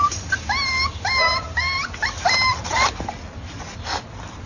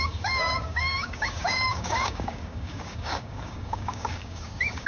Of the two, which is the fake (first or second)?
second